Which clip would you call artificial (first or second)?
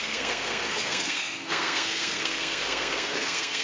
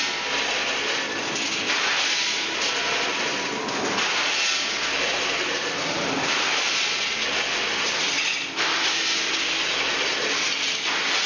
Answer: first